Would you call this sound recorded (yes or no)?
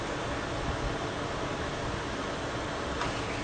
yes